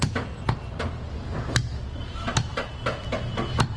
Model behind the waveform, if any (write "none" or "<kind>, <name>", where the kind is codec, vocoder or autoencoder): none